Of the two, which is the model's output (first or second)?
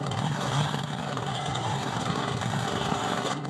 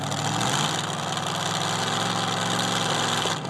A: first